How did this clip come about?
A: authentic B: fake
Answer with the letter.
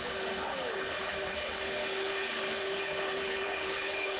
B